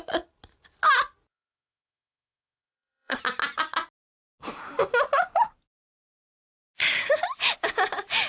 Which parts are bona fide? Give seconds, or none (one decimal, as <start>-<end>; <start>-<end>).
0.0-1.3; 3.2-8.3